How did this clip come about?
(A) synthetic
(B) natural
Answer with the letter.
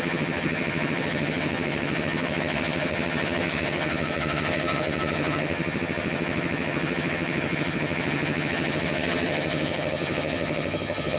A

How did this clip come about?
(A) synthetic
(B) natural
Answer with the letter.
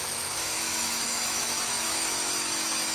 A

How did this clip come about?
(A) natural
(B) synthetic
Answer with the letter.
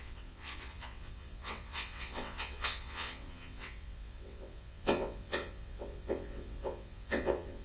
B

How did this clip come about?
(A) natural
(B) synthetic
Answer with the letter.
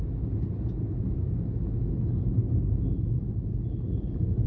A